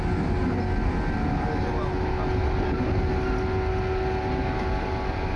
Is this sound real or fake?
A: real